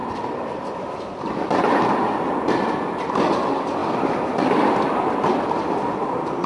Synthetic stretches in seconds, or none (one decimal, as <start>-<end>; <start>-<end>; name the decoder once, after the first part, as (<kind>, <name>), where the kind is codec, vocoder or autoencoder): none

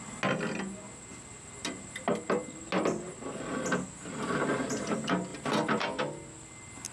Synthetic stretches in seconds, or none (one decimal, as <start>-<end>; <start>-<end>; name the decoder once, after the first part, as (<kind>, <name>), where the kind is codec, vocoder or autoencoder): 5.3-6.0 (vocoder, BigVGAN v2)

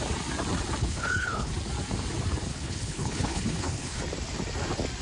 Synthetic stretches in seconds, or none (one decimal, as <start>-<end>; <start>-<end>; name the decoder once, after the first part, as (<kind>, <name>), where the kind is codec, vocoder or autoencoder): 0.8-1.5 (codec, HILCodec); 2.5-4.0

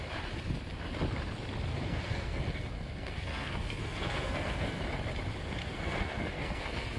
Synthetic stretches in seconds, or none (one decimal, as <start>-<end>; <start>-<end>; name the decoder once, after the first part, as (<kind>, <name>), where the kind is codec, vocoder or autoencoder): 1.7-4.8 (codec, SNAC); 5.6-7.0